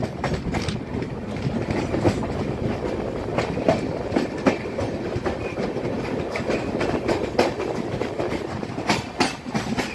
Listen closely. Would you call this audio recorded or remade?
recorded